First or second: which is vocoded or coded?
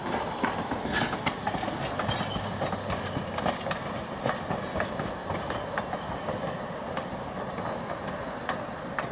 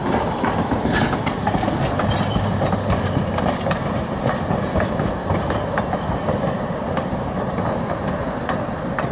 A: second